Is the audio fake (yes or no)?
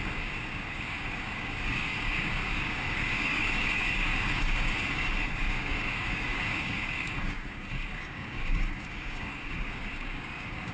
yes